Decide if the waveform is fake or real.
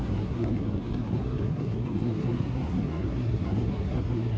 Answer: fake